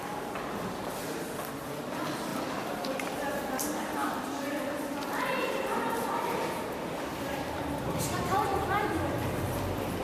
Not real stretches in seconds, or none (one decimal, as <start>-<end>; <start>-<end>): 0.0-8.5; 9.1-10.0